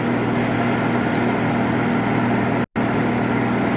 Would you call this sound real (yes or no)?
yes